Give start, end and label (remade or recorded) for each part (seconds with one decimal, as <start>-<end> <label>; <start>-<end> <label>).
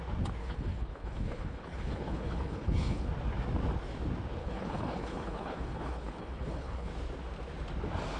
0.0-0.4 recorded; 0.4-3.1 remade; 3.1-4.4 recorded; 4.4-6.9 remade; 6.9-8.2 recorded